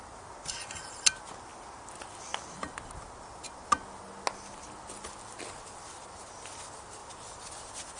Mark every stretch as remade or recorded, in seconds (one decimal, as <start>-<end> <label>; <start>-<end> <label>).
0.0-7.0 recorded; 7.0-7.5 remade; 7.5-8.0 recorded